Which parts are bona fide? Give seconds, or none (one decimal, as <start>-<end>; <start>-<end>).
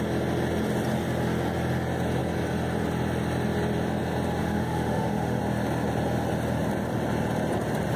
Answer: 0.0-4.4; 5.4-8.0